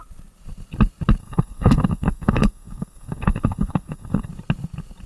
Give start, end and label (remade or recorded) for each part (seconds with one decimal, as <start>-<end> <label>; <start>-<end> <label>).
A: 0.0-1.2 recorded; 1.2-4.3 remade; 4.3-5.1 recorded